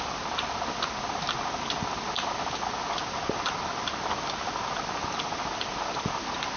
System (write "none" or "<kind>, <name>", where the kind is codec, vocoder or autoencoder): none